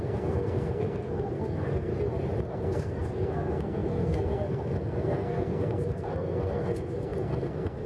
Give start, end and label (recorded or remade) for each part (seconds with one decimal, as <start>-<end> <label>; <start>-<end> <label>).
0.0-1.9 remade; 1.9-2.5 recorded; 2.5-7.9 remade